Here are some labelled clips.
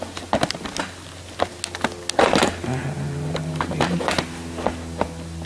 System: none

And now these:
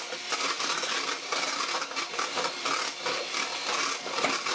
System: none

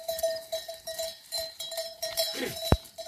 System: vocoder, BigVGAN v2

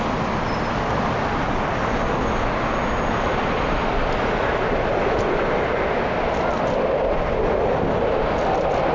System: none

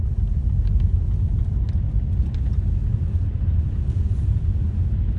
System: none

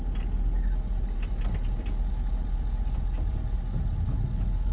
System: none